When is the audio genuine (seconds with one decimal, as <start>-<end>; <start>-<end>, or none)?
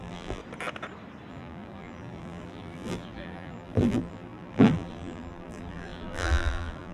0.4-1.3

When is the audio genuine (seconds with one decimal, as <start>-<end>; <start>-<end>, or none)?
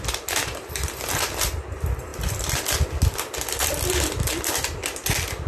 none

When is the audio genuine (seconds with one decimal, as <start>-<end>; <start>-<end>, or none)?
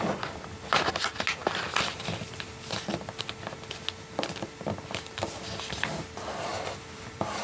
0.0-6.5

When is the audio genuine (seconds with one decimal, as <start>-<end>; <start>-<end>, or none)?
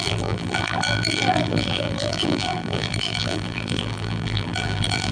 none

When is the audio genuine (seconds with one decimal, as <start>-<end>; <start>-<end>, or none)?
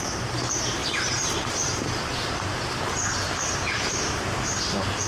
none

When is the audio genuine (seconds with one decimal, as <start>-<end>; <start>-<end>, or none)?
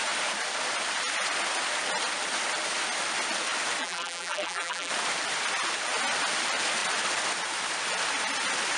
0.0-3.8; 4.9-8.8